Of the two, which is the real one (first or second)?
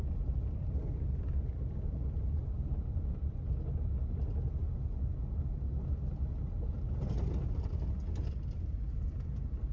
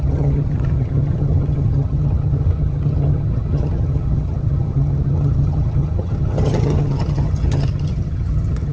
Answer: first